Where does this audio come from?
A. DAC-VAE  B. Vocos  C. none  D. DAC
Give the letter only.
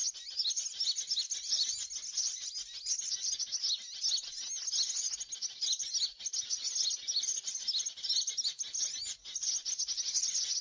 C